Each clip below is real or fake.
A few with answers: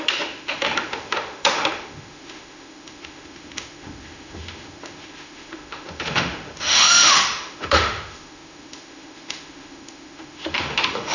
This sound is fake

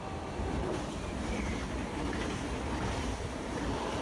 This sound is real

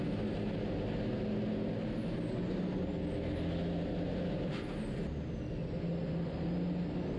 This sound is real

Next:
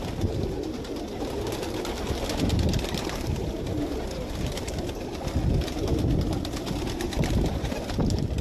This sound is real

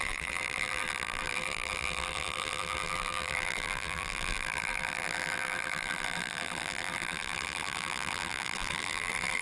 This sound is fake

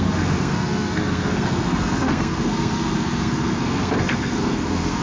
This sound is fake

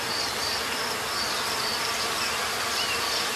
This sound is real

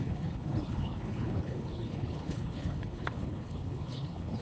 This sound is fake